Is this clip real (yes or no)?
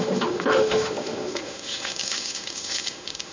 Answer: no